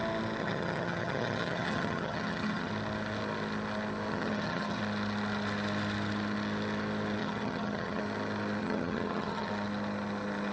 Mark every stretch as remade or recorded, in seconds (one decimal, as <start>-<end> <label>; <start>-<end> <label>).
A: 0.0-0.4 recorded; 0.4-2.7 remade; 2.7-4.1 recorded; 4.1-4.8 remade; 4.8-7.2 recorded; 7.2-8.0 remade; 8.0-8.6 recorded; 8.6-9.5 remade; 9.5-10.5 recorded